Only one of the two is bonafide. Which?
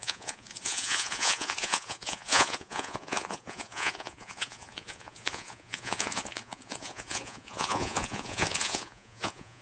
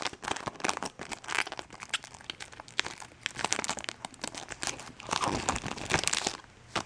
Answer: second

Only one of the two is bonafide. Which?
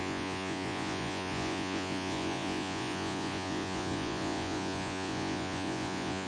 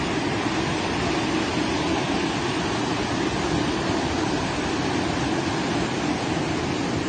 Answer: second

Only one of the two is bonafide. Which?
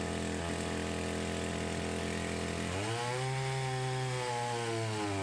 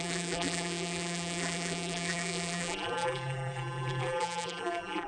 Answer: first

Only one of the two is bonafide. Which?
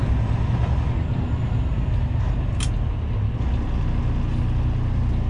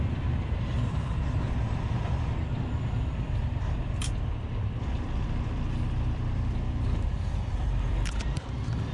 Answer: first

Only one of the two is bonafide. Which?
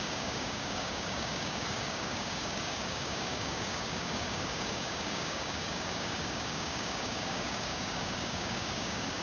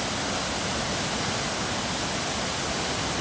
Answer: second